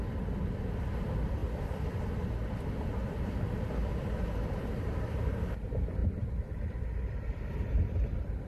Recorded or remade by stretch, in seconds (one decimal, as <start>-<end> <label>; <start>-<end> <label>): 0.0-8.5 remade